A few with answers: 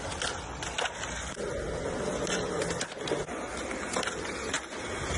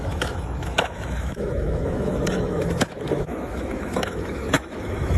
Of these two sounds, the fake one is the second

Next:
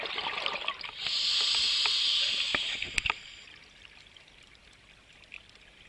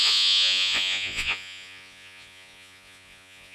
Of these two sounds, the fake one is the second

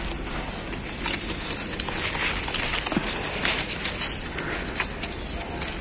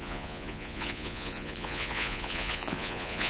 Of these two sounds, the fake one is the second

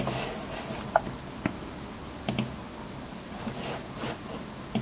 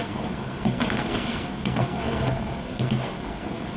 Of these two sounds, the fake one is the second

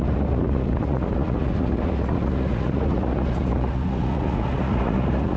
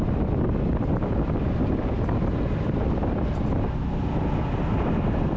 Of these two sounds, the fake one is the first